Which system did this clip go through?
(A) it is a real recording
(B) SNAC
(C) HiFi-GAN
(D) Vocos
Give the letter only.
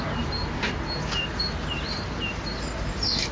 A